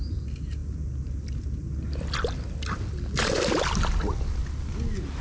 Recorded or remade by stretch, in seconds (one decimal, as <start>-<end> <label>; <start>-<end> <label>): 0.0-5.2 recorded